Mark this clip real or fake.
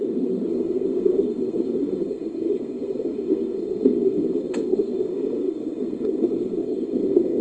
fake